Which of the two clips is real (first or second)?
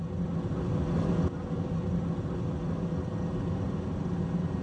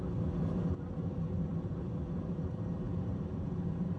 first